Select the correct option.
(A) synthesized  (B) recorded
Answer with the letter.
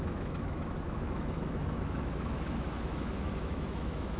A